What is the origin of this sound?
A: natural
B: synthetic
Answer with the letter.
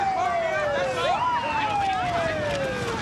A